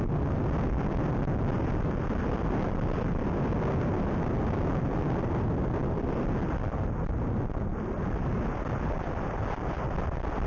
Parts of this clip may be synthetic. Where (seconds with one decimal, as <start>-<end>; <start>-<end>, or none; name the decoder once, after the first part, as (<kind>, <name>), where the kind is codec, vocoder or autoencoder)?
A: none